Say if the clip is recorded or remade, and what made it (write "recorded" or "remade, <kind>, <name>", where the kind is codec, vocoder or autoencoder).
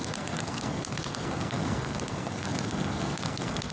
remade, codec, SNAC